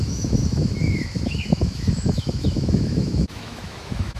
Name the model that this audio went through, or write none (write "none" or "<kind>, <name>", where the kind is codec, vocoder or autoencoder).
autoencoder, DAC-VAE